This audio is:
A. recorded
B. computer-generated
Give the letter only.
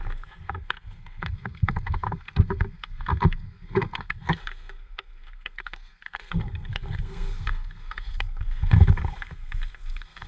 B